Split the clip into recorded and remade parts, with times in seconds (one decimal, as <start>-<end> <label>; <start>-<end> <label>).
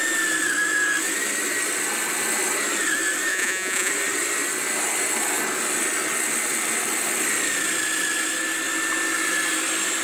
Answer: 0.0-3.3 recorded; 3.3-3.9 remade; 3.9-10.0 recorded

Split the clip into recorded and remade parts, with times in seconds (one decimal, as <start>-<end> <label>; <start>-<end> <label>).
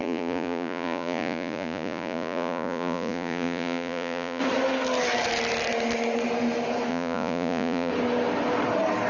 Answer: 0.0-4.4 remade; 4.4-6.9 recorded; 6.9-7.9 remade; 7.9-9.1 recorded